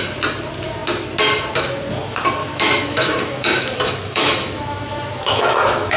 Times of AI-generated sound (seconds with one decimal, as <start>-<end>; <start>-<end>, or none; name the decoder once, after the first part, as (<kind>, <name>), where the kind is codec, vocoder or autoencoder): 2.4-6.0 (autoencoder, DAC-VAE)